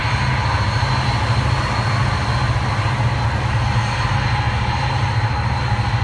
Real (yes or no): yes